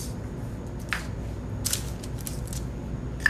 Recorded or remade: recorded